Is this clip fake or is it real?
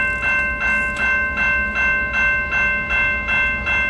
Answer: real